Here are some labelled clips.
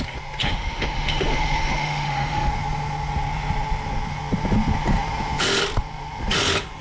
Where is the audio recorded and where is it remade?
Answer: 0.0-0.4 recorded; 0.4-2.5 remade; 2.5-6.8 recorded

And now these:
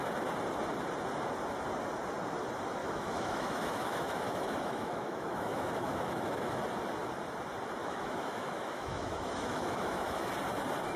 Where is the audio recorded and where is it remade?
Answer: 0.0-2.8 recorded; 2.8-6.6 remade; 6.6-7.8 recorded; 7.8-10.3 remade; 10.3-11.0 recorded

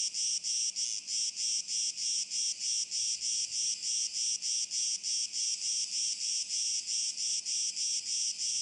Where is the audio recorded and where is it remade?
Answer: 0.0-8.6 recorded

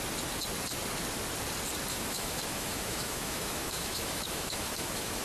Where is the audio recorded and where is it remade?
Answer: 0.0-1.9 recorded; 1.9-5.2 remade

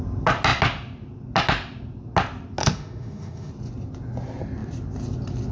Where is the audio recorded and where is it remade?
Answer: 0.0-2.6 recorded; 2.6-3.5 remade; 3.5-5.5 recorded

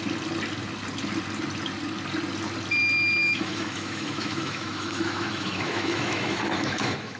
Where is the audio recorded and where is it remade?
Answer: 0.0-3.2 recorded; 3.2-7.2 remade